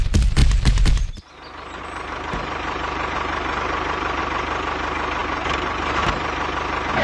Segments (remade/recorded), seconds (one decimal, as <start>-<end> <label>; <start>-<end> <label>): 0.0-0.4 recorded; 0.4-4.2 remade; 4.2-5.2 recorded; 5.2-5.8 remade; 5.8-7.0 recorded